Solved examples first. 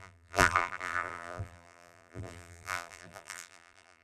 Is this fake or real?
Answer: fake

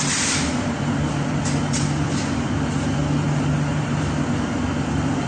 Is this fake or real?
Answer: fake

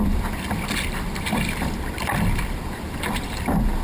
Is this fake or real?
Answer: fake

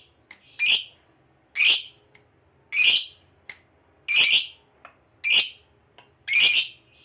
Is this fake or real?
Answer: real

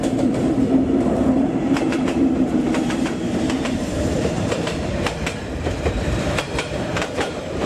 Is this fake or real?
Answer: fake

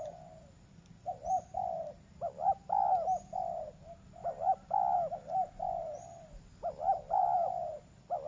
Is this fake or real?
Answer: real